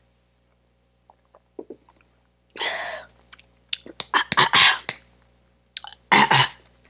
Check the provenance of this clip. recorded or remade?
recorded